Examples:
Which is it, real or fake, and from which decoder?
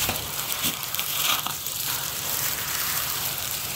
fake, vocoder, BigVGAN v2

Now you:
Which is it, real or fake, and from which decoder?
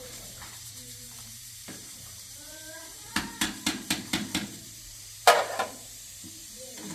fake, vocoder, BigVGAN v2